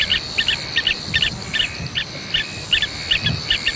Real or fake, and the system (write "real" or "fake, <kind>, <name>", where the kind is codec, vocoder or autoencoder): real